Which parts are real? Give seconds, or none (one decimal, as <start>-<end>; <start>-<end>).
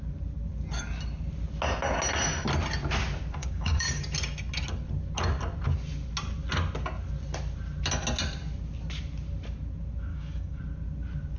0.0-3.4; 4.0-10.1; 10.6-11.4